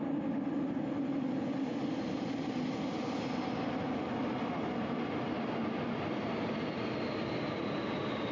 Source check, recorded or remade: recorded